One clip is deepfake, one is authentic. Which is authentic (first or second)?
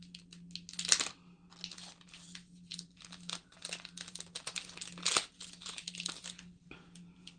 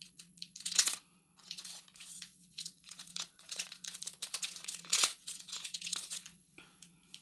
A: first